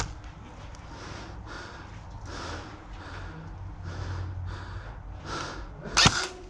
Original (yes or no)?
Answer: yes